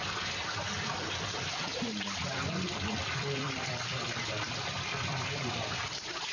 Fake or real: fake